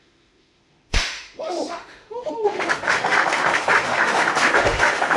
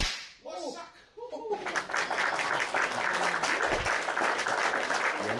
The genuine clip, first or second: second